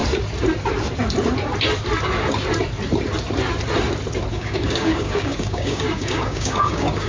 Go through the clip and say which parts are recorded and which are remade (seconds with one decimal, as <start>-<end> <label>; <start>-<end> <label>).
0.0-4.3 recorded; 4.3-7.1 remade